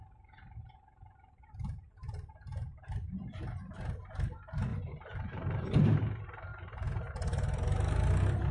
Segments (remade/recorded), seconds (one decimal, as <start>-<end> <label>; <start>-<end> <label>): 0.0-0.6 recorded; 0.6-2.9 remade; 2.9-4.7 recorded; 4.7-6.0 remade; 6.0-6.5 recorded; 6.5-7.1 remade; 7.1-8.5 recorded